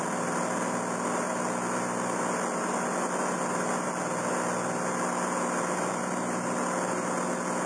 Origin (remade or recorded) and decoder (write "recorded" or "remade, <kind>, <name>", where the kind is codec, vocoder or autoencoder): recorded